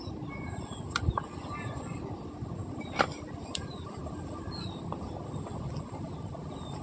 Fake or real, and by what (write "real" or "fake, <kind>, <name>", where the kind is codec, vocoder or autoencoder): real